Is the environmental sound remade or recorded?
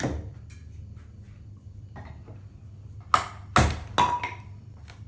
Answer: recorded